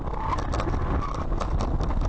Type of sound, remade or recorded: recorded